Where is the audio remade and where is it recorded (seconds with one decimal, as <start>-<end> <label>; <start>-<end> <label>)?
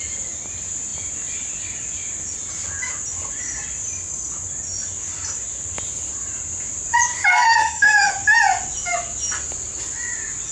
0.0-7.3 recorded; 7.3-8.1 remade; 8.1-10.5 recorded